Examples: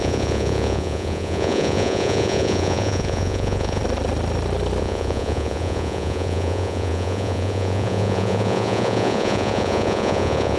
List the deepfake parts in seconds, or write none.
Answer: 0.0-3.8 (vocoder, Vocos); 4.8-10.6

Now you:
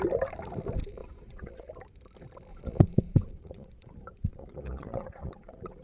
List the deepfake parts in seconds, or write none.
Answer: 1.0-1.7 (vocoder, Vocos); 2.5-5.8

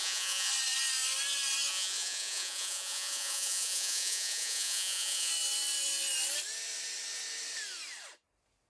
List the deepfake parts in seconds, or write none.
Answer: 0.0-0.5 (vocoder, Vocos); 1.7-5.3

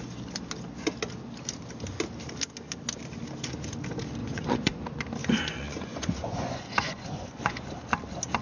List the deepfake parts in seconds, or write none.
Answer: 4.2-4.8 (vocoder, Vocos); 5.2-7.6

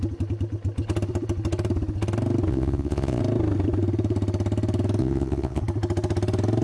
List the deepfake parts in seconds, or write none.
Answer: 2.5-3.2 (vocoder, Vocos); 5.0-5.6